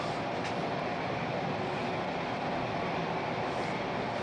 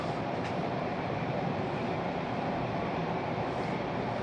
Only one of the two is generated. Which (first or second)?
second